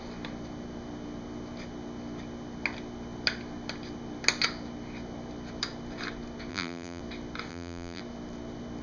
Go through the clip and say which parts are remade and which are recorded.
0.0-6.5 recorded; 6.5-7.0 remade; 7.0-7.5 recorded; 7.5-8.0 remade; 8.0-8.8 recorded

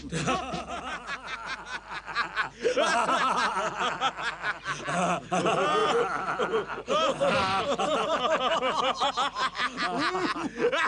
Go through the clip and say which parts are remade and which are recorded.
0.0-5.8 recorded; 5.8-9.1 remade; 9.1-10.9 recorded